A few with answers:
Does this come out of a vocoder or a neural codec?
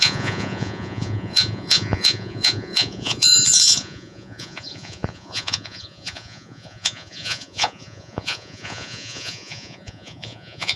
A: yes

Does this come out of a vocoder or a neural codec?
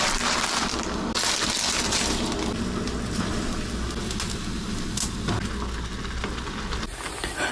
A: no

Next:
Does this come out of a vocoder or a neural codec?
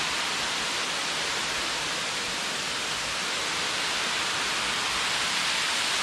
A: no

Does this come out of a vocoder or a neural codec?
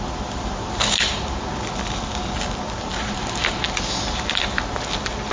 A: no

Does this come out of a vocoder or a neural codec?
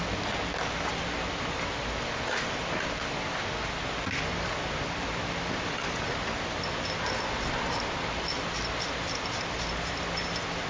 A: no